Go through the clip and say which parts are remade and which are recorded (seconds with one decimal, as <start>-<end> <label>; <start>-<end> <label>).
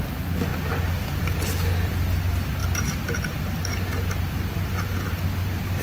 0.0-0.5 recorded; 0.5-2.0 remade; 2.0-5.8 recorded